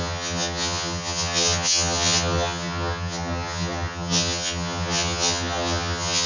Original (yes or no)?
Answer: no